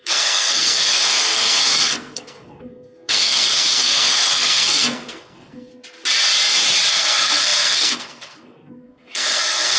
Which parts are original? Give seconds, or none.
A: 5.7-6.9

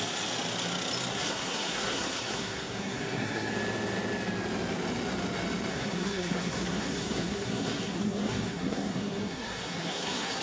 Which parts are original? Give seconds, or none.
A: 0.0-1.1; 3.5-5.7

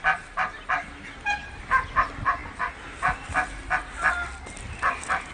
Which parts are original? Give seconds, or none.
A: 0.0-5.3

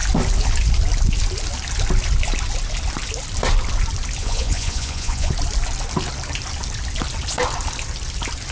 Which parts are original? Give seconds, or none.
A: 0.0-4.2; 5.3-8.5

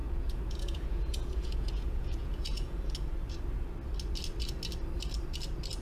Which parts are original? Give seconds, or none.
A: 2.8-5.8

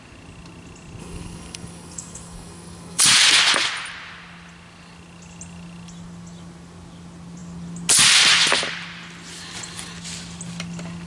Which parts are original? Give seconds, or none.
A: 0.0-1.0; 3.0-11.1

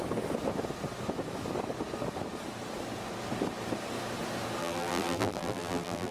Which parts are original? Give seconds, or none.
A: 0.0-4.6

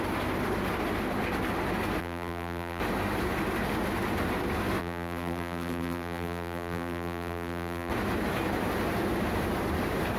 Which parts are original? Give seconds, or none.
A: 0.0-2.0; 2.8-4.8; 7.9-10.2